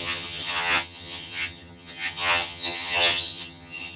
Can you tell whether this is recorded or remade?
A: remade